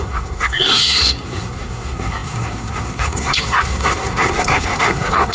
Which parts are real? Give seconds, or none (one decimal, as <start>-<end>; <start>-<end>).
none